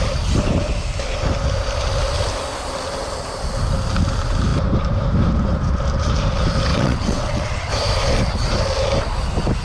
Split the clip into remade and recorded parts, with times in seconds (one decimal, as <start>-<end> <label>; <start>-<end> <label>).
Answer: 0.0-6.7 recorded; 6.7-7.7 remade; 7.7-9.6 recorded